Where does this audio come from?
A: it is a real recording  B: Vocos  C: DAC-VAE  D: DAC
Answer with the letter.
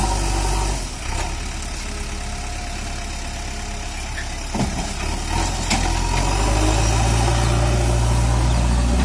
A